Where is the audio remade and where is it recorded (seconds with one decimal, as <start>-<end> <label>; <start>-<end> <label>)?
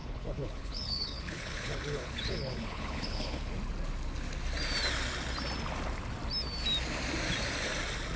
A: 0.0-3.5 remade; 3.5-8.2 recorded